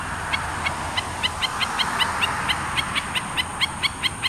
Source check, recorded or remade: recorded